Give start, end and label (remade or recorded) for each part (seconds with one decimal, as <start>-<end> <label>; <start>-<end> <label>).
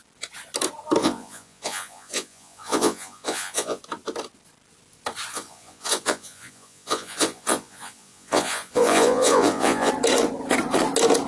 0.0-1.0 recorded; 1.0-3.8 remade; 3.8-5.3 recorded; 5.3-9.9 remade; 9.9-11.3 recorded